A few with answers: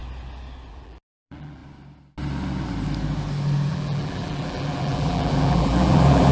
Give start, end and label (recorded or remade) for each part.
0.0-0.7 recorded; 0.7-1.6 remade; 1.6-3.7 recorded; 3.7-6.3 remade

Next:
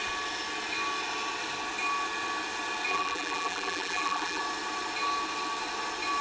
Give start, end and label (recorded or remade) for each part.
0.0-2.9 recorded; 2.9-4.4 remade; 4.4-6.2 recorded

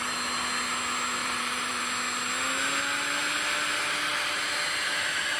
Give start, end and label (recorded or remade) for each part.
0.0-1.2 recorded; 1.2-1.8 remade; 1.8-5.4 recorded